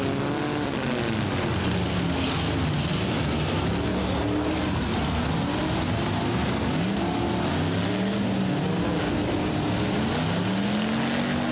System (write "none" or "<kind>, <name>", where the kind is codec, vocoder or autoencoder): none